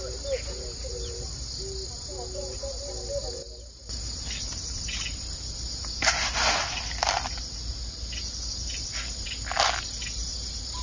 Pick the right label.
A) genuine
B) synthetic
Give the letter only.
A